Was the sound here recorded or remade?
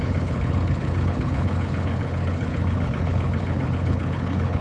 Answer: remade